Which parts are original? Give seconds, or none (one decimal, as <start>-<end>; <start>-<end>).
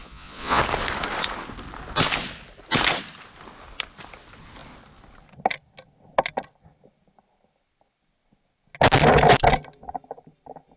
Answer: 0.6-10.8